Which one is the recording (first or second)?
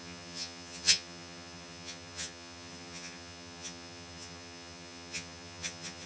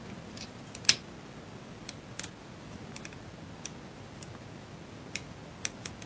second